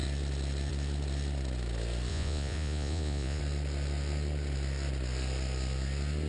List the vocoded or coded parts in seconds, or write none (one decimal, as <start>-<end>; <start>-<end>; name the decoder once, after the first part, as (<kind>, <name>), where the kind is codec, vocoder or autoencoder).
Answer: 2.1-3.4 (vocoder, Vocos)